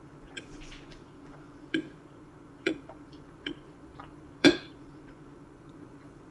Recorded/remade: remade